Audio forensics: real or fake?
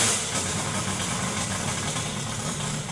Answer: fake